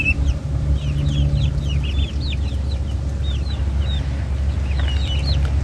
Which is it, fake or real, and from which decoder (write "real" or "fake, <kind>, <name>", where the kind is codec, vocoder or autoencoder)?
real